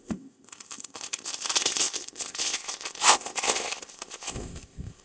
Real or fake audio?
fake